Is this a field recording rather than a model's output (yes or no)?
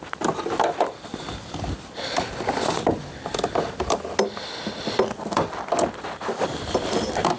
yes